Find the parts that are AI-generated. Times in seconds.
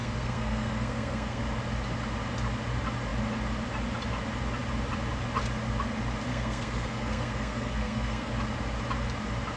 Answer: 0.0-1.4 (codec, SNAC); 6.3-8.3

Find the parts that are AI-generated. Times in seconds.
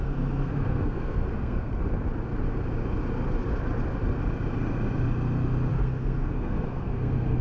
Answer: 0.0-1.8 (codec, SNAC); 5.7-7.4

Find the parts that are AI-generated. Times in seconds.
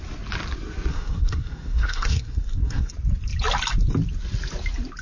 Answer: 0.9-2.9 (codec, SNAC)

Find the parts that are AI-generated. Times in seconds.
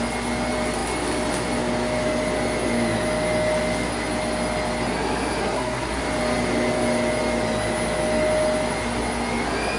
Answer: 5.4-6.0 (codec, SNAC)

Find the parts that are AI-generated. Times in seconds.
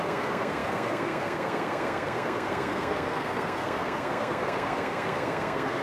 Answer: 0.0-5.8 (codec, SNAC)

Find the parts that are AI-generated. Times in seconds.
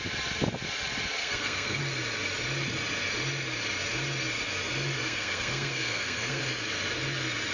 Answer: 1.2-1.8 (codec, SNAC); 5.0-6.4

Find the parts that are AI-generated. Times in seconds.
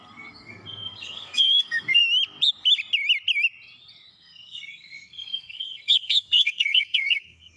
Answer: 0.0-2.0 (codec, SNAC); 4.1-7.6